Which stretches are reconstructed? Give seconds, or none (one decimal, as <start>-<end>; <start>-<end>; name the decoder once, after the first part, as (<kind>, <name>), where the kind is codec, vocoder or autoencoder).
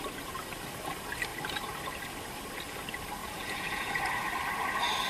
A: 3.2-4.0 (vocoder, Vocos)